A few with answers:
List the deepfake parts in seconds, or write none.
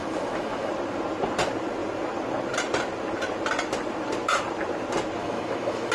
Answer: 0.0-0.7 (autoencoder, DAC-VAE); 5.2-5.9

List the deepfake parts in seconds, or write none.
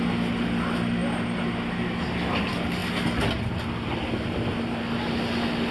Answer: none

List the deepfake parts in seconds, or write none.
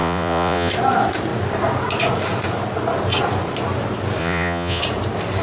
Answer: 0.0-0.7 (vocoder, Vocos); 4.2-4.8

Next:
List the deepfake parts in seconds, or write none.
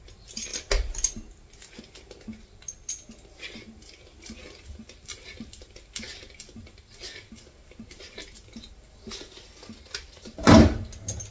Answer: none